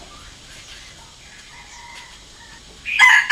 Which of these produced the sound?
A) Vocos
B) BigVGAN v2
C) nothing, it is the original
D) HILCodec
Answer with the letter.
C